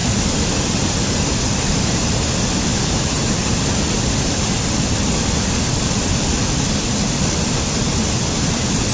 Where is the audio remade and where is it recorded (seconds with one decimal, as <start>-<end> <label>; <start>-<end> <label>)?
0.0-8.9 recorded